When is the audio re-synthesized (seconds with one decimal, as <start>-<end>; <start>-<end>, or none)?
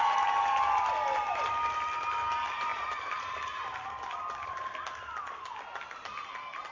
2.7-4.2